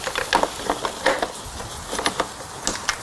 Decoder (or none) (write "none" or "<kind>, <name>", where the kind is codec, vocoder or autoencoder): none